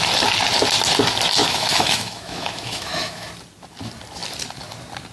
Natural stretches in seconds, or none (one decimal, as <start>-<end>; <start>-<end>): 0.0-1.4; 3.3-5.1